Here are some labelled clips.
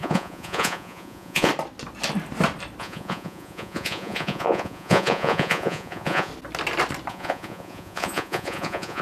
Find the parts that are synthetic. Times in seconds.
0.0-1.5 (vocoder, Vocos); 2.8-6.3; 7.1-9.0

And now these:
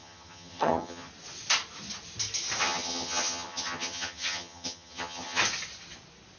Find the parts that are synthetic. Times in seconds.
0.0-1.1 (vocoder, HiFi-GAN); 2.6-5.4

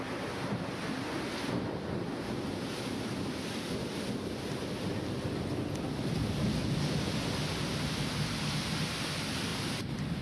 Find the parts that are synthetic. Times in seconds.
9.5-10.2 (vocoder, BigVGAN v2)